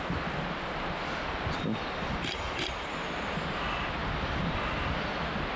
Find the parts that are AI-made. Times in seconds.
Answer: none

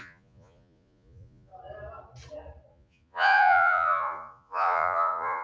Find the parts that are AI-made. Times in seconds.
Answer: 0.0-1.5 (vocoder, Vocos); 2.7-5.4